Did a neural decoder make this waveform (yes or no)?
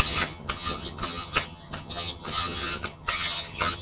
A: yes